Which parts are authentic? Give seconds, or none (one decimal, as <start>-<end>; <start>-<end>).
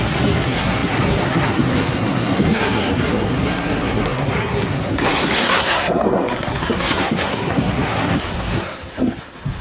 none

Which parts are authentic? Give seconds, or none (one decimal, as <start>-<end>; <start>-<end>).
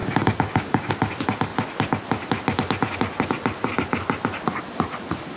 0.9-5.4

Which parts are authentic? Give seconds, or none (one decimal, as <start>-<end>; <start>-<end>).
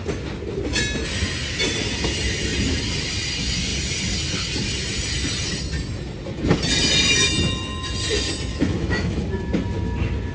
0.0-8.5; 9.2-10.3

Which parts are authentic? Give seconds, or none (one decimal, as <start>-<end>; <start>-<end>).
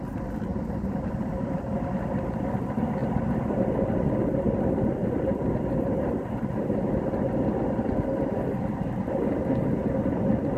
0.0-0.5; 2.5-5.0; 6.9-10.6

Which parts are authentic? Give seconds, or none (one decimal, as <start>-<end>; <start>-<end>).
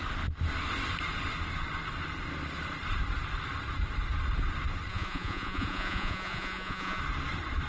0.0-4.9; 7.0-7.7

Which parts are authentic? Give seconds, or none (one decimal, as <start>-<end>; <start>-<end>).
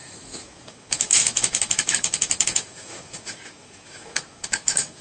none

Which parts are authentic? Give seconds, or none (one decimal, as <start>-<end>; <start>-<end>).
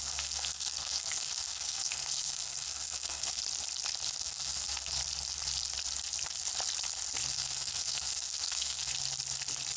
3.4-4.2; 5.0-7.3; 8.9-9.8